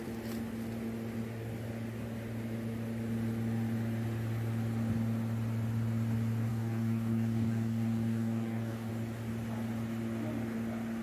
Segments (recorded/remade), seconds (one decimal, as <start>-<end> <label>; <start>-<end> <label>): 0.0-6.5 recorded; 6.5-8.9 remade; 8.9-11.0 recorded